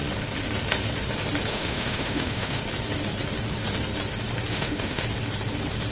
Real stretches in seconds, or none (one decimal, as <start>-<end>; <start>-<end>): 0.0-1.5; 2.6-4.5; 5.0-5.9